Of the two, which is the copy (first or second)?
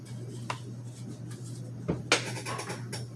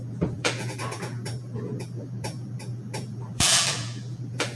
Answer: second